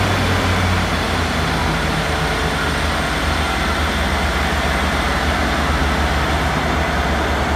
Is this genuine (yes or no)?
yes